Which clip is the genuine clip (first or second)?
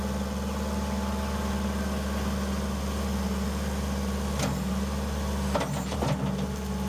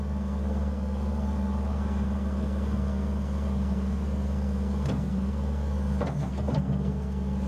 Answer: first